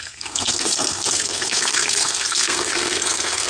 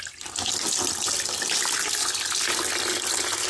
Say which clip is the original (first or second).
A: second